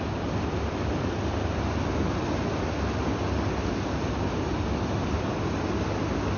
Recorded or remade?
recorded